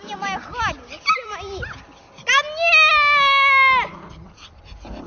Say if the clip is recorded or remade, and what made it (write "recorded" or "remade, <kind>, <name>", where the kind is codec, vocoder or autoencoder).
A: recorded